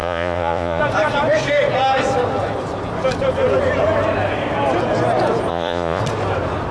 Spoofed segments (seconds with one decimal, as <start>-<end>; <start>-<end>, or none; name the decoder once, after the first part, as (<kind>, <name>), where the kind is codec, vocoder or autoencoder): 0.0-0.8 (vocoder, Vocos); 5.5-6.0